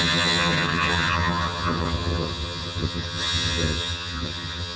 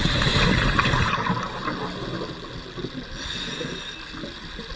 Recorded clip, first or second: second